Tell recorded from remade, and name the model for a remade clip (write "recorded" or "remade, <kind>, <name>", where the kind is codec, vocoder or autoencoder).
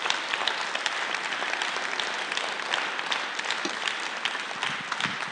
recorded